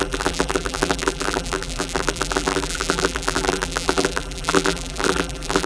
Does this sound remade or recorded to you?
remade